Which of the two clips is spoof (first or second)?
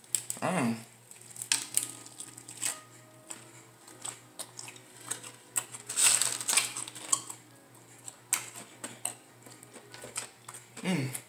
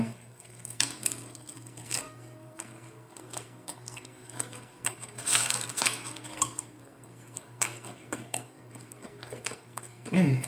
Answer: second